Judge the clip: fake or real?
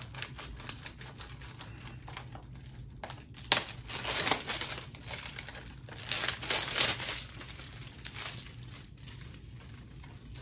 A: real